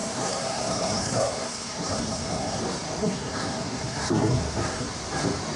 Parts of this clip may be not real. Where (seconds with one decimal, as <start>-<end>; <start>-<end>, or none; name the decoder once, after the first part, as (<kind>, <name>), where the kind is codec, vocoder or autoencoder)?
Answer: 0.0-2.6 (codec, SNAC); 3.0-4.9